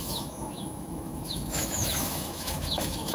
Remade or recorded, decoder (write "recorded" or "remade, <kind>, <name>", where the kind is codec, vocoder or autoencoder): remade, autoencoder, DAC-VAE